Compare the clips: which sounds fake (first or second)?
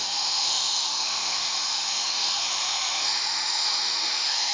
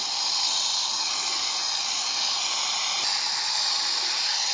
first